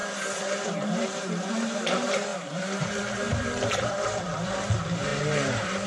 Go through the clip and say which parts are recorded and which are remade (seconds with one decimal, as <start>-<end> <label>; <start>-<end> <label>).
0.0-5.9 remade